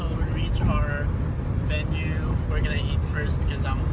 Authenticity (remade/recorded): recorded